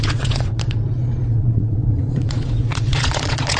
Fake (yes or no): yes